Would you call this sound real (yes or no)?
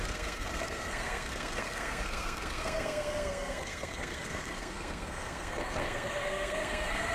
no